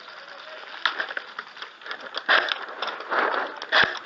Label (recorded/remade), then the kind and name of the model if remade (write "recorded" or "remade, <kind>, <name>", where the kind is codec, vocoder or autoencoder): recorded